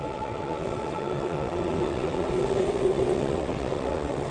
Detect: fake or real fake